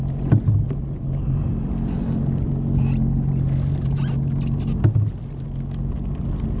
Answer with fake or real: real